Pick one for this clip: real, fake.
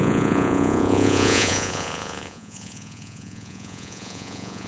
fake